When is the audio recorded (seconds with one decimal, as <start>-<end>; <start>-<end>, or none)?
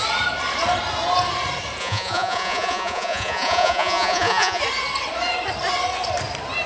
0.0-1.8; 4.6-6.7